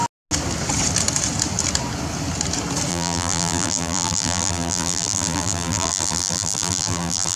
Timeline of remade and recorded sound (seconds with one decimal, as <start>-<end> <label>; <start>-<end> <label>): 0.0-2.9 recorded; 2.9-7.4 remade